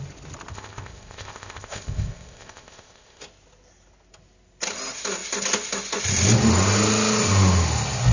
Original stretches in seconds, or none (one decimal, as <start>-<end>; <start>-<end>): 0.0-0.5; 3.2-8.1